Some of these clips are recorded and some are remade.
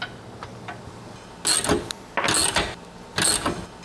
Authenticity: recorded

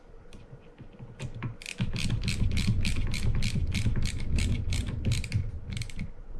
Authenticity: recorded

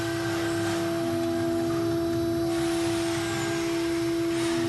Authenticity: recorded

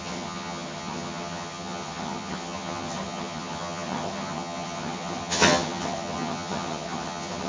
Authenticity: remade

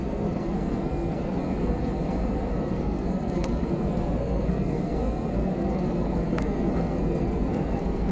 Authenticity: remade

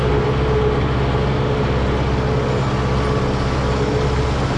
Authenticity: recorded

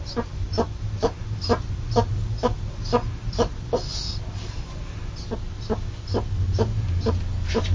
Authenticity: recorded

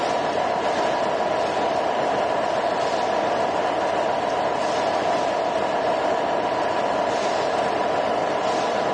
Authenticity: recorded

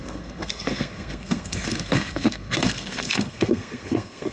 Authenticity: remade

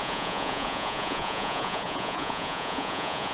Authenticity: remade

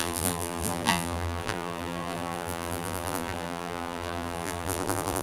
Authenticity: remade